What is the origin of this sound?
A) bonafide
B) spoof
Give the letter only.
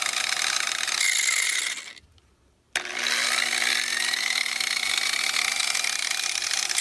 A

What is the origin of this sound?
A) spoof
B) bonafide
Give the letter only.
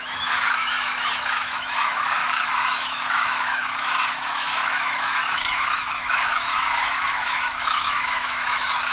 A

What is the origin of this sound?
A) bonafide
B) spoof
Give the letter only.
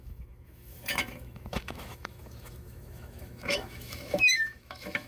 B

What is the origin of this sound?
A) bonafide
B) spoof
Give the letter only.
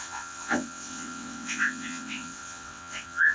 B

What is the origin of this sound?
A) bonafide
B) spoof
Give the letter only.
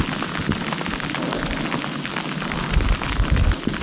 A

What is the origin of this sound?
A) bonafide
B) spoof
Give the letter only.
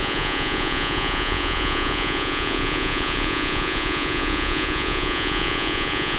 B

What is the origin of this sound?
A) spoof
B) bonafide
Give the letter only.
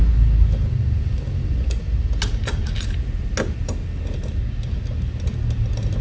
B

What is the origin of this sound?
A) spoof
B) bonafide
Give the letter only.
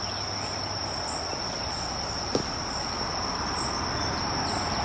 B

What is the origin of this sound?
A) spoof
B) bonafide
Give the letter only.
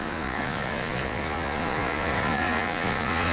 A